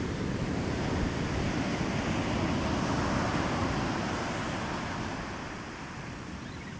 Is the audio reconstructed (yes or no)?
no